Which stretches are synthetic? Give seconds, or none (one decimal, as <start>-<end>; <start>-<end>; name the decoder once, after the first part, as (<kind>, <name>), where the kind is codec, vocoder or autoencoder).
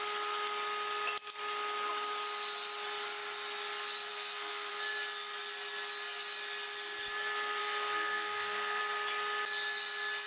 4.1-4.7 (codec, SNAC); 7.6-8.8